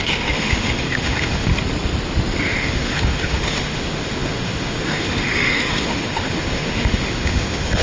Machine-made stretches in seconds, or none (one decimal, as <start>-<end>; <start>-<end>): 0.0-1.5; 2.6-7.8